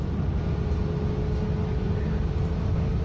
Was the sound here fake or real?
real